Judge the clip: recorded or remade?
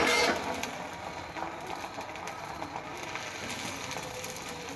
recorded